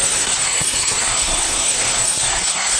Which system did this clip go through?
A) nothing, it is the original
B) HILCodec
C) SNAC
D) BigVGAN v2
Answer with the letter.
C